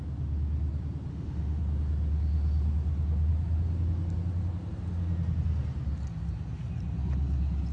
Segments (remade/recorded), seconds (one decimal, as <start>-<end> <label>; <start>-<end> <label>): 0.0-1.1 recorded; 1.1-1.6 remade; 1.6-7.7 recorded